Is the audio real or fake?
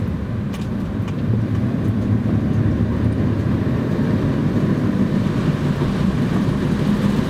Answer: fake